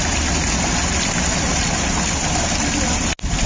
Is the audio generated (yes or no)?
no